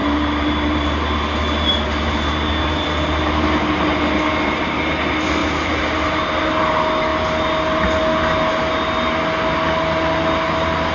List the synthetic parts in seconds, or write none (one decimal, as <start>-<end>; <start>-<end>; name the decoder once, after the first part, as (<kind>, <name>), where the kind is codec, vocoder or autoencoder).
0.0-4.3 (vocoder, BigVGAN v2); 5.4-6.6